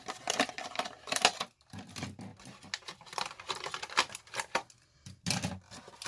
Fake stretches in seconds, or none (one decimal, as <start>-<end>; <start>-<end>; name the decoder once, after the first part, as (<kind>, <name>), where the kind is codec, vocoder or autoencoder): none